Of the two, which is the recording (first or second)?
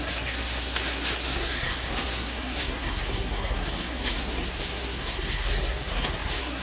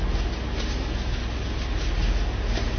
second